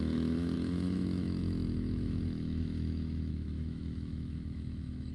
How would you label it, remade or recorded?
remade